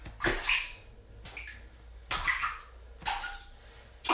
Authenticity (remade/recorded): recorded